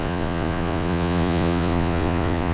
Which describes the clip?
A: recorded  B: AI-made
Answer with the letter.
B